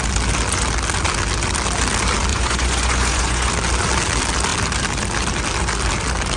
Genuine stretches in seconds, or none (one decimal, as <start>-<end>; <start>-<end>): 0.0-2.3; 3.5-6.4